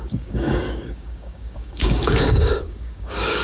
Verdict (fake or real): fake